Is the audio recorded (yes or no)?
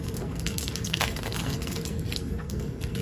no